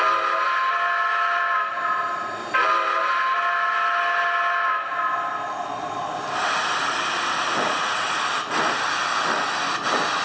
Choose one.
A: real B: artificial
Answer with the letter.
A